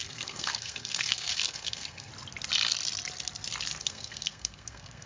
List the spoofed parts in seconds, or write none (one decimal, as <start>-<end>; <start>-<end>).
0.0-2.1; 3.8-5.1